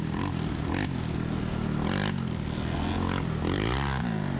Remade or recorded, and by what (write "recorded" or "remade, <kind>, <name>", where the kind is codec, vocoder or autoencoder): recorded